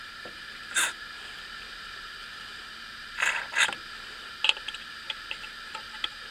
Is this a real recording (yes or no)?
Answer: yes